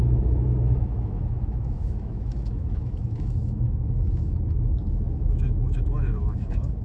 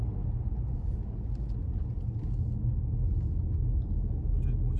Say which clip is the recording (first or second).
second